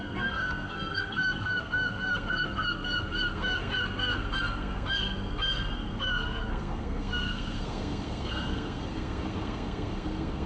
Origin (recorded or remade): remade